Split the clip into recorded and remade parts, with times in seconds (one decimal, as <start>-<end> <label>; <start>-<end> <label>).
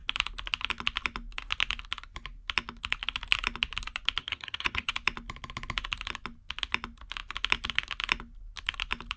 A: 0.0-4.2 recorded; 4.2-4.9 remade; 4.9-9.2 recorded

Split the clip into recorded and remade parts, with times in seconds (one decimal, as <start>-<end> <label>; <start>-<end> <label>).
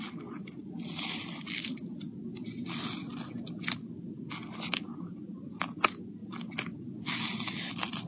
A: 0.0-8.1 recorded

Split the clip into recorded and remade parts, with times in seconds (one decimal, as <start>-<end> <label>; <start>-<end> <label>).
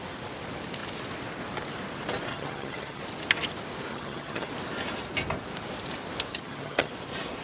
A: 0.0-2.3 recorded; 2.3-3.0 remade; 3.0-3.9 recorded; 3.9-4.5 remade; 4.5-6.3 recorded; 6.3-6.9 remade; 6.9-7.4 recorded